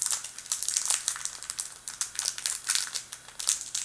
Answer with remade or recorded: recorded